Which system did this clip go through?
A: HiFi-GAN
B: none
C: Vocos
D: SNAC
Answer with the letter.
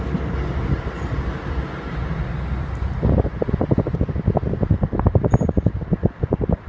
B